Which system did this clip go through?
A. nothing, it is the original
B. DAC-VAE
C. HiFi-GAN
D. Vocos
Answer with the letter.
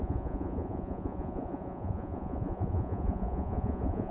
D